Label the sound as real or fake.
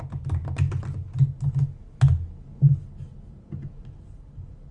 real